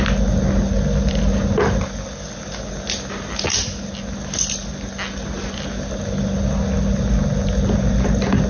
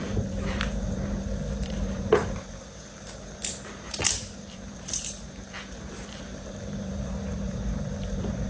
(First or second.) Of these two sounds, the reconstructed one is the second